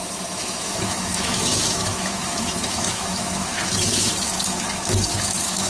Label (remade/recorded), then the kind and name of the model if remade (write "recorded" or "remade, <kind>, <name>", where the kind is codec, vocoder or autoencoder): remade, autoencoder, DAC-VAE